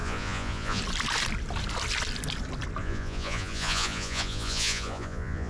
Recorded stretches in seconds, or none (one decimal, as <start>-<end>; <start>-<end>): 0.8-2.8